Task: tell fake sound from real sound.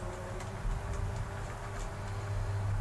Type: real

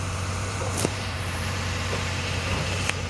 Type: fake